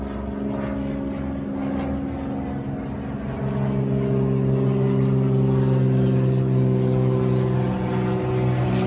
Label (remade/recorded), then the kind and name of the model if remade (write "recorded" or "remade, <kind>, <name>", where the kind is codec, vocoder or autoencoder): recorded